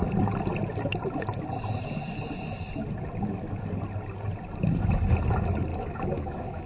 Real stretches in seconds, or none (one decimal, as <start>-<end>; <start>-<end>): 0.0-5.7